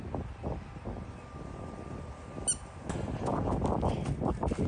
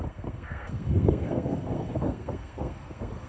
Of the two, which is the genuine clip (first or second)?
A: first